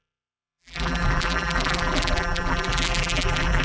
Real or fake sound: fake